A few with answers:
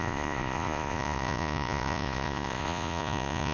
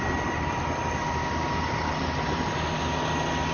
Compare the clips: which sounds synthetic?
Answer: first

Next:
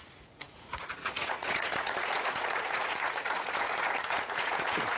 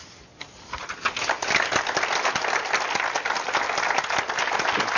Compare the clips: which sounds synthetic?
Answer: first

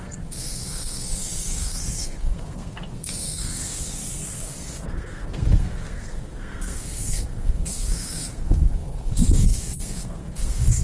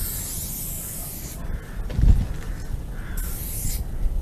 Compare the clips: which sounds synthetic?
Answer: first